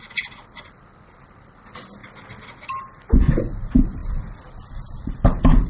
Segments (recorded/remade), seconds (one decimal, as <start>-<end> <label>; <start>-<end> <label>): 0.0-5.7 recorded